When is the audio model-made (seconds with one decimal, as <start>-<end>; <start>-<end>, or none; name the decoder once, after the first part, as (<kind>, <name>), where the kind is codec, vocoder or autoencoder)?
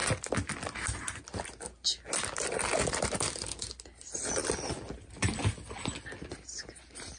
none